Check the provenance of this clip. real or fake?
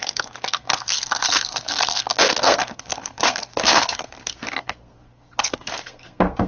fake